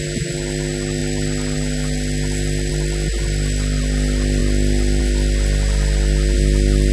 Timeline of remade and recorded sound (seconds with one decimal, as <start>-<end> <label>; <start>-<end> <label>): 0.0-6.9 recorded